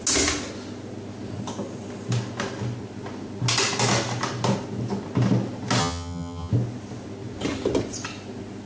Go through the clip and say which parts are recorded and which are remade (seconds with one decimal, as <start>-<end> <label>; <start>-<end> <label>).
0.0-5.8 recorded; 5.8-6.5 remade; 6.5-8.7 recorded